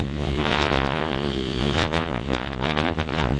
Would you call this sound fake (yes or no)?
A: yes